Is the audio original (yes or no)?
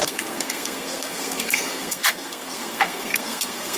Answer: no